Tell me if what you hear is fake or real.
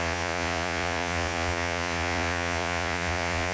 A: fake